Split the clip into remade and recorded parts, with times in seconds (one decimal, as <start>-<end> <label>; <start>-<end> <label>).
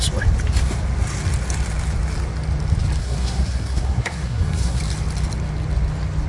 0.0-3.0 recorded; 3.0-4.8 remade; 4.8-6.3 recorded